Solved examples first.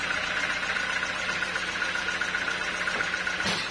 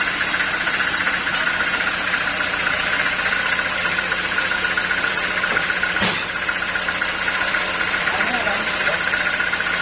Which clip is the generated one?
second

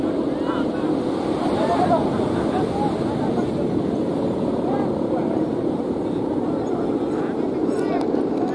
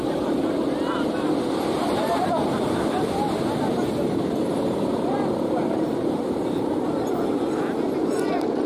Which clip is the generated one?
second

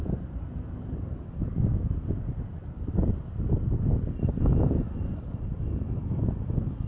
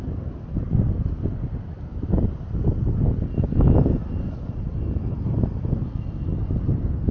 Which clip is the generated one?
first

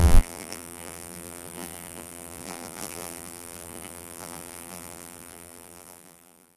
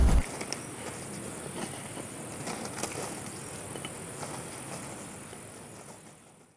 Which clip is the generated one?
first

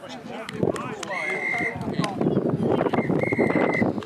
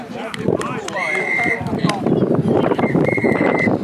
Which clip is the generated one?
second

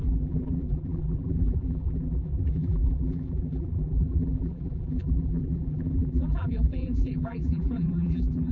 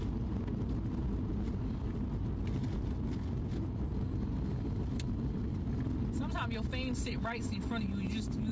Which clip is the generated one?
first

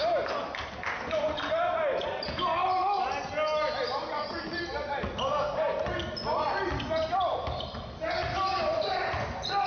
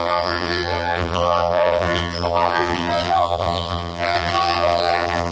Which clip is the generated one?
second